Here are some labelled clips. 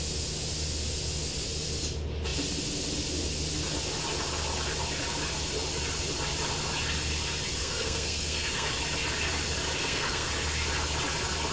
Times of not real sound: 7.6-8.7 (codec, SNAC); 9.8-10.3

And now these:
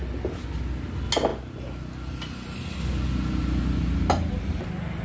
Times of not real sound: none

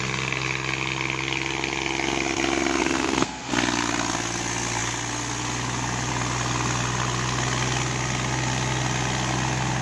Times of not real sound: 2.8-3.5 (codec, SNAC)